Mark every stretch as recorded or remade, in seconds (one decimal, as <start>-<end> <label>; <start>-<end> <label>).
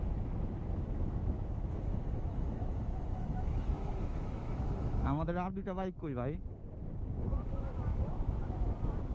0.0-6.5 remade; 6.5-7.2 recorded; 7.2-9.1 remade